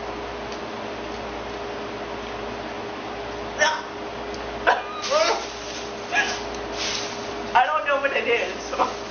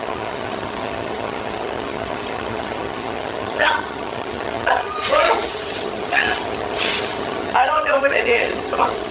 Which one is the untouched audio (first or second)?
first